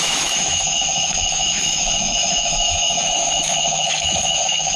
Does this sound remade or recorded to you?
remade